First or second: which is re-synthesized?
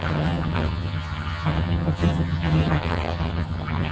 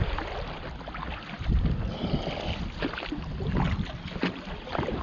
first